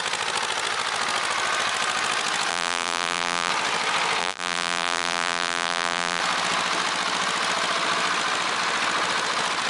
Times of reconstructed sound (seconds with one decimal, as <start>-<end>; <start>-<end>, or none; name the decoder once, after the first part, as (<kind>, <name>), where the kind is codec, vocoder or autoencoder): 2.5-3.5 (vocoder, BigVGAN v2); 4.2-6.2